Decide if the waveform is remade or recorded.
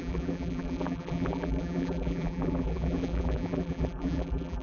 remade